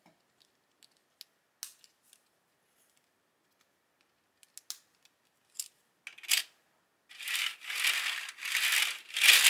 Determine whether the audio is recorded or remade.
recorded